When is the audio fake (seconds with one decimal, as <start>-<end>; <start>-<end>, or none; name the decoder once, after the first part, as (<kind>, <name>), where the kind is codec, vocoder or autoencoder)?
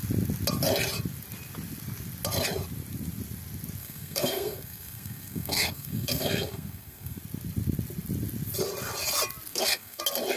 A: 3.8-7.2 (codec, SNAC); 9.5-10.0